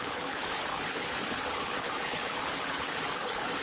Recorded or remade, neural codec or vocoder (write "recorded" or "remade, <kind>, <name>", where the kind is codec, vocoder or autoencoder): remade, codec, HILCodec